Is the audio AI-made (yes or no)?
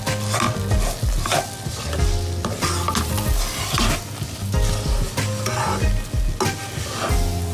no